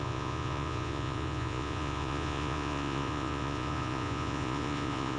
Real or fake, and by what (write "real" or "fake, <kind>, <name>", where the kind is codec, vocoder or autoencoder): fake, vocoder, Vocos